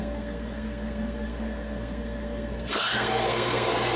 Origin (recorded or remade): remade